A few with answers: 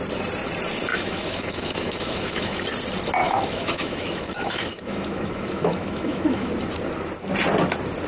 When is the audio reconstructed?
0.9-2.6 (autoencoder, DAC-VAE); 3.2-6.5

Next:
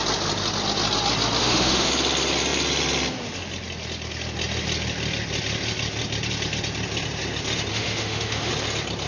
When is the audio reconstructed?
1.4-1.9 (autoencoder, DAC-VAE); 7.7-8.5